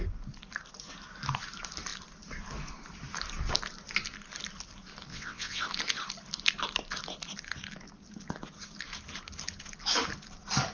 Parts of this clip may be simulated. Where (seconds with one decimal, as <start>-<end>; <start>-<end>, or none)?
5.1-5.6